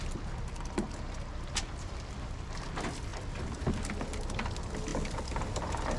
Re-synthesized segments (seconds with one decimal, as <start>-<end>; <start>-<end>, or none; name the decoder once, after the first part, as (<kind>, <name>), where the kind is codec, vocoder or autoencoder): none